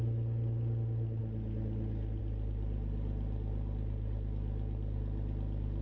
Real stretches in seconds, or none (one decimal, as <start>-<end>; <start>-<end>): 0.0-5.8